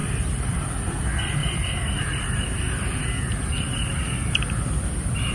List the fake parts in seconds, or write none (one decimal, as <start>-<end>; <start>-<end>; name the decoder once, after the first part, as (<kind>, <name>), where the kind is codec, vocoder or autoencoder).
0.0-0.7 (vocoder, BigVGAN v2); 1.4-3.0